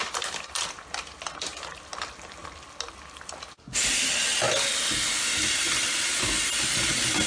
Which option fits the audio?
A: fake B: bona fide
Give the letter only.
B